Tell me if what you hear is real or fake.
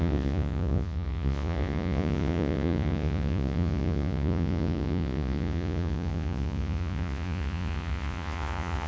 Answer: fake